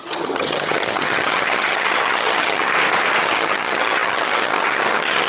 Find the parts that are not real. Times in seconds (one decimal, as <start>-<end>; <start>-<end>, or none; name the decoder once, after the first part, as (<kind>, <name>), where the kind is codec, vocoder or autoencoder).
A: 0.0-2.7 (vocoder, HiFi-GAN); 3.2-5.3